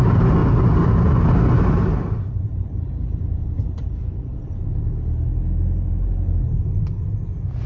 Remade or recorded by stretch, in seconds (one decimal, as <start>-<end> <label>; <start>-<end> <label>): 0.0-7.7 recorded